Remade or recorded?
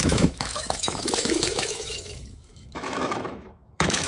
remade